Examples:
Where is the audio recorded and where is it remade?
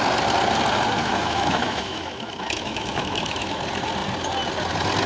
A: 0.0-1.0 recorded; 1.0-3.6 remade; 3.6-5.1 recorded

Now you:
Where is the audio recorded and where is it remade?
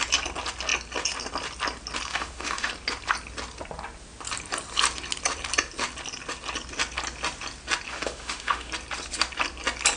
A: 0.0-2.1 recorded; 2.1-2.7 remade; 2.7-7.9 recorded; 7.9-8.7 remade; 8.7-10.0 recorded